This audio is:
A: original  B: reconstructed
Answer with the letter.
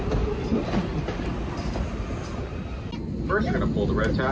A